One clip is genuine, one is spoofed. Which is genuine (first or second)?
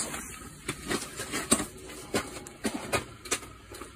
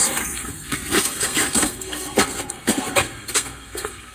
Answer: first